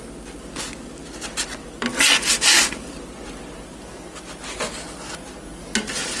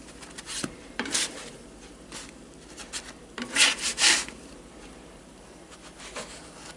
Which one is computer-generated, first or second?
second